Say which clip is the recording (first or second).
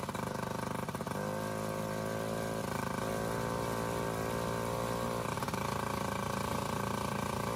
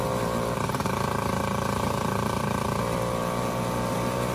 first